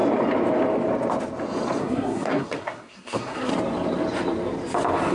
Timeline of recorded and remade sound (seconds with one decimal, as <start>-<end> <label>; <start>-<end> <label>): 0.0-1.8 recorded; 1.8-3.5 remade; 3.5-5.1 recorded

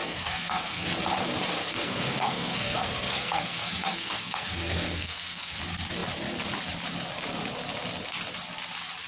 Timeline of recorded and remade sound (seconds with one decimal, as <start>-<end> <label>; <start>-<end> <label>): 0.0-0.9 remade; 0.9-1.6 recorded; 1.6-5.6 remade; 5.6-9.1 recorded

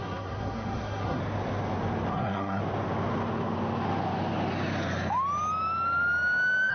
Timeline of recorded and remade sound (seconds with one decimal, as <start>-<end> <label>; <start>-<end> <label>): 0.0-1.2 remade; 1.2-2.1 recorded; 2.1-2.6 remade; 2.6-6.7 recorded

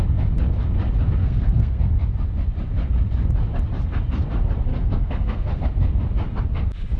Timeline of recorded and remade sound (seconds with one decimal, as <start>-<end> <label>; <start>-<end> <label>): 0.0-1.2 recorded; 1.2-1.8 remade; 1.8-4.7 recorded; 4.7-5.6 remade; 5.6-7.0 recorded

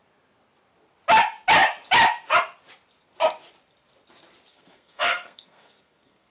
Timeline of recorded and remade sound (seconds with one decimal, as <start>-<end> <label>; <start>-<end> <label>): 0.0-4.5 recorded; 4.5-6.3 remade

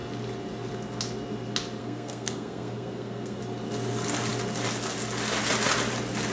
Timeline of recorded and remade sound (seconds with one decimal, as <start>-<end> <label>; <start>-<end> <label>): 0.0-1.8 recorded; 1.8-3.4 remade; 3.4-6.3 recorded

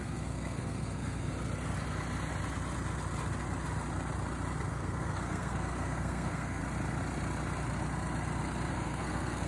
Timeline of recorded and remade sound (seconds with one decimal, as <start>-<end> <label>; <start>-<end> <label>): 0.0-1.3 remade; 1.3-4.7 recorded; 4.7-6.6 remade; 6.6-8.7 recorded; 8.7-9.5 remade